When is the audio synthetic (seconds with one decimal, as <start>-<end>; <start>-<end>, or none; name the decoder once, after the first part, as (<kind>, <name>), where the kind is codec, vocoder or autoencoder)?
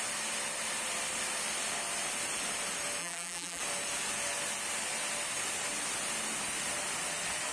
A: 3.0-3.6 (vocoder, BigVGAN v2)